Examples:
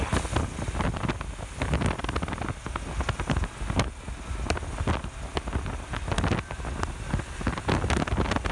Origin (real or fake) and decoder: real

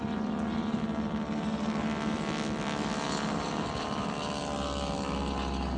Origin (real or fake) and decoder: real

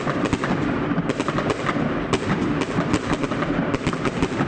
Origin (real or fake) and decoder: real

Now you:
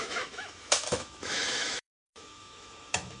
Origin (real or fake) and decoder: fake, autoencoder, DAC-VAE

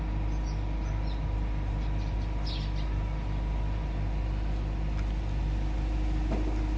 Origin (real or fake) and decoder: real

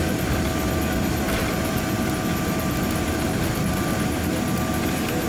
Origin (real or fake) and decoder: real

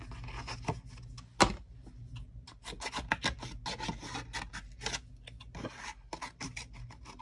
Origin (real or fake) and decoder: real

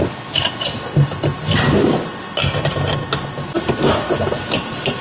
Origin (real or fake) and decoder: real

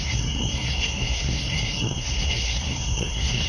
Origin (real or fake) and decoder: fake, codec, SNAC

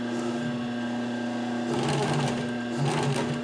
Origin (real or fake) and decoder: real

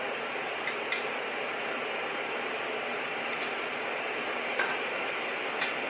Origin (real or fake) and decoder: real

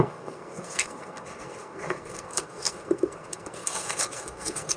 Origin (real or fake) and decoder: fake, codec, SNAC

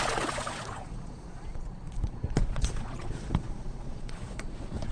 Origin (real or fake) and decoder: fake, vocoder, Vocos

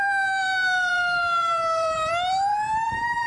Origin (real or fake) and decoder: fake, vocoder, BigVGAN v2